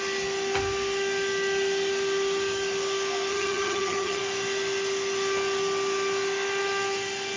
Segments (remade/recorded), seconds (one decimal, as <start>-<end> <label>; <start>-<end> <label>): 0.0-3.3 recorded; 3.3-4.2 remade; 4.2-7.4 recorded